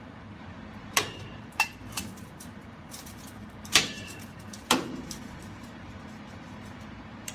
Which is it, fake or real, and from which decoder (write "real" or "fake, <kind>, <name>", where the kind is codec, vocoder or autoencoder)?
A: fake, vocoder, BigVGAN v2